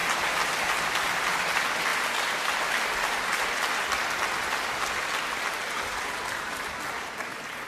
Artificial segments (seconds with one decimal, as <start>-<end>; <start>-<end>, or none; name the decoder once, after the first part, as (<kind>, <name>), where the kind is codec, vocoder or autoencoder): none